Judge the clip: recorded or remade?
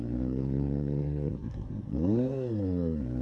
remade